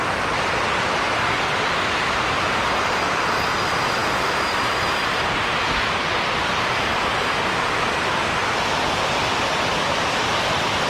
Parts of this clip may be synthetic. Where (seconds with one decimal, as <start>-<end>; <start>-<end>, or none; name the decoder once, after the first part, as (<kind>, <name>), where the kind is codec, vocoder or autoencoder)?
none